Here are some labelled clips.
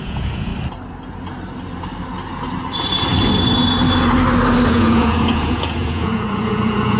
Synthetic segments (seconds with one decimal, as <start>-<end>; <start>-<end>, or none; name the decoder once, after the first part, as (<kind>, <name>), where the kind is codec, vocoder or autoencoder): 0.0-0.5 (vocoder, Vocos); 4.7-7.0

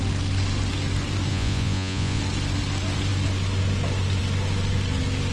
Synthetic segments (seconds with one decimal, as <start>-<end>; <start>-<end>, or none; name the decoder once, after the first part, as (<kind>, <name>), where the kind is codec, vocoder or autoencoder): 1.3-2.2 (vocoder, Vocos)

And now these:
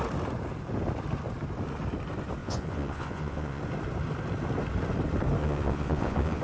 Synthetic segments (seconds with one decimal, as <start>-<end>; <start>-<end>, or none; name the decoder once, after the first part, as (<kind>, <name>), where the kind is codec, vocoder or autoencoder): 2.4-3.6 (vocoder, Vocos); 5.4-6.4

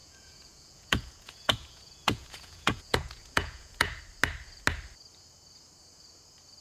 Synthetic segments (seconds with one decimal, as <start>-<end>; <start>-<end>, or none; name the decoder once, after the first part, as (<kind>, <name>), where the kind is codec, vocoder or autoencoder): 0.0-4.0 (vocoder, Vocos)

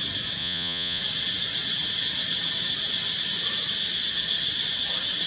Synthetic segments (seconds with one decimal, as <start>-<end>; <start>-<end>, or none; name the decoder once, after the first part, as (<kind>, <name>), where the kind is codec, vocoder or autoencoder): 0.4-1.0 (vocoder, Vocos)